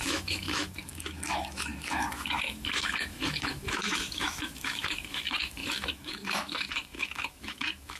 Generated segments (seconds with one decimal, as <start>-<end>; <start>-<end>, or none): 0.0-8.0